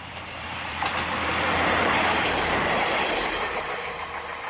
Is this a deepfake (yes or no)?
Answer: yes